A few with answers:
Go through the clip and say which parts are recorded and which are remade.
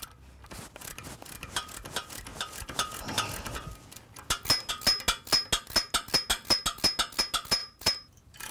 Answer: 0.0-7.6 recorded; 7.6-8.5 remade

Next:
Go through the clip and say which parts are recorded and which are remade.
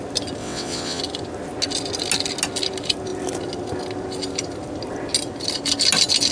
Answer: 0.0-0.4 recorded; 0.4-1.0 remade; 1.0-6.3 recorded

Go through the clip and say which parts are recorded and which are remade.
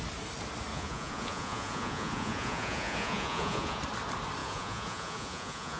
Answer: 0.0-0.7 recorded; 0.7-3.8 remade; 3.8-4.4 recorded; 4.4-5.8 remade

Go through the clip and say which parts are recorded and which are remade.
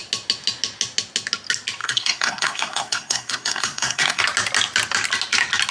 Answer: 0.0-1.8 recorded; 1.8-4.2 remade; 4.2-5.7 recorded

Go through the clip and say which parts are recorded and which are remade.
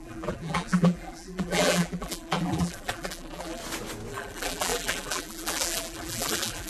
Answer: 0.0-3.6 remade; 3.6-4.1 recorded; 4.1-6.7 remade